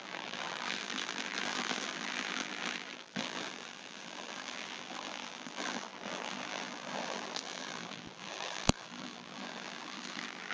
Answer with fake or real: fake